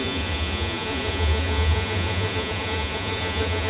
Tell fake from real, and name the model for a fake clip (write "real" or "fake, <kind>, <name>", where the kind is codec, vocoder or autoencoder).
fake, vocoder, Vocos